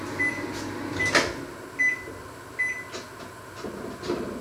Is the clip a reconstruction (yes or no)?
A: no